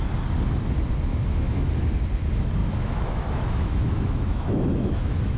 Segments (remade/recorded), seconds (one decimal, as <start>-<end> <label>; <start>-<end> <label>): 0.0-1.1 recorded; 1.1-1.7 remade; 1.7-2.6 recorded; 2.6-5.4 remade